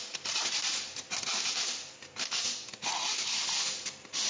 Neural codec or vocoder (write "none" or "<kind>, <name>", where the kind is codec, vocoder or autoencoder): none